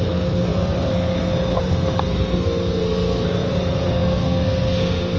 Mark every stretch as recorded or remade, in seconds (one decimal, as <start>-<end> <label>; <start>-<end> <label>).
0.0-5.2 remade